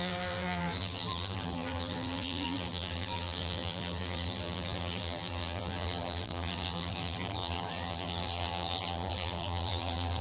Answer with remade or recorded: remade